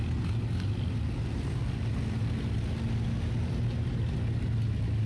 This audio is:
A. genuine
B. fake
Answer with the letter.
A